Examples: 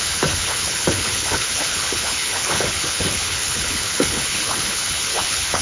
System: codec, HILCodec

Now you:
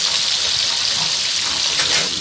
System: none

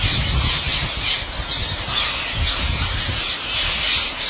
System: none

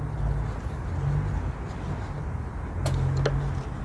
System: none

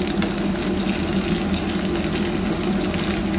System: none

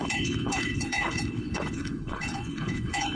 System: codec, HILCodec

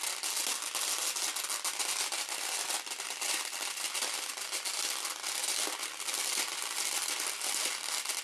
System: none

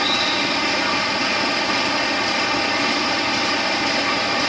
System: none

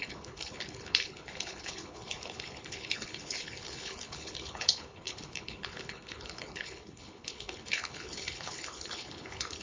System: codec, HILCodec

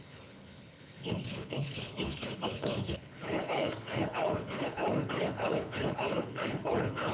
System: codec, HILCodec